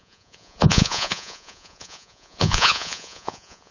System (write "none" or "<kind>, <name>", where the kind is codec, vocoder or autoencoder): vocoder, Vocos